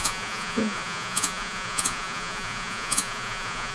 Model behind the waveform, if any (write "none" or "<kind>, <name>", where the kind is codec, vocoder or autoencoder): vocoder, Vocos